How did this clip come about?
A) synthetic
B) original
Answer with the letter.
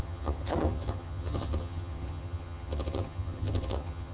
A